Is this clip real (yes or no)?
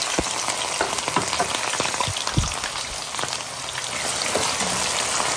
yes